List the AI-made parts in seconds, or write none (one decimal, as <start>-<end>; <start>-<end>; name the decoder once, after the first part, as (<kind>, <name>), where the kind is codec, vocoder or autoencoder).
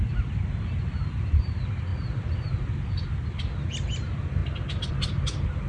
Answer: none